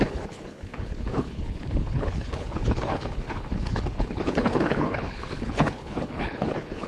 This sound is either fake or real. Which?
fake